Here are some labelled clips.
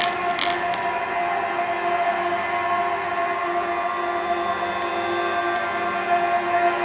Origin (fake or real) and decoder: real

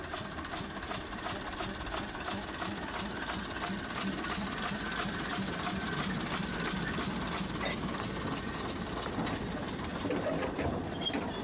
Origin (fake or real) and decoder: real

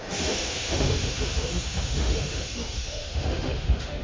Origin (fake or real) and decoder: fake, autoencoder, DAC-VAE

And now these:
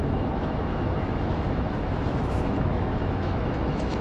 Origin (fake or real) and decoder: fake, autoencoder, DAC-VAE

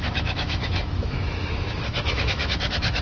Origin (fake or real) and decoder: fake, autoencoder, DAC-VAE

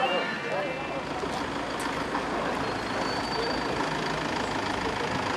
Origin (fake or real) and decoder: real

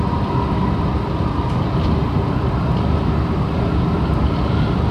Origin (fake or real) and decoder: real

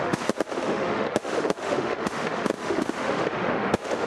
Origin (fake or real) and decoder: fake, autoencoder, DAC-VAE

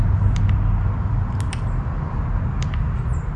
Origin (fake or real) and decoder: real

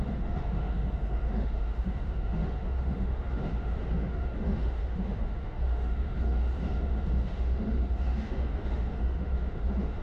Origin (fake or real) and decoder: fake, autoencoder, DAC-VAE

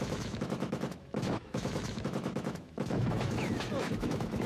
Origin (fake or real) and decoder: fake, autoencoder, DAC-VAE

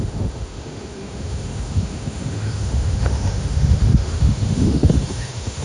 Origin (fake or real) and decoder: fake, autoencoder, DAC-VAE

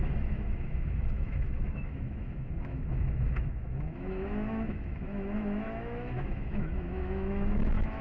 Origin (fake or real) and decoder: fake, autoencoder, DAC-VAE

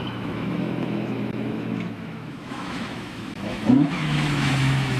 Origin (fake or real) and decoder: fake, autoencoder, DAC-VAE